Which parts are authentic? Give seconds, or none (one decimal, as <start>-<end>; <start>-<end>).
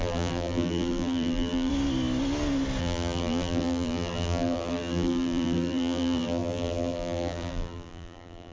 1.7-2.8